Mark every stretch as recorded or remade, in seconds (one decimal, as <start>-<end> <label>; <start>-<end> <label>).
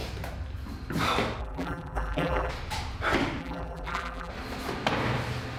0.0-1.4 recorded; 1.4-2.5 remade; 2.5-3.4 recorded; 3.4-4.3 remade; 4.3-5.6 recorded